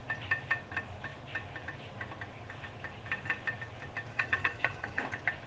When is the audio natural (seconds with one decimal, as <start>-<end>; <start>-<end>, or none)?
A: 0.0-4.1; 5.0-5.5